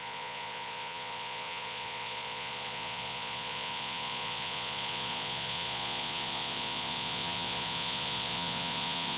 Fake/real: fake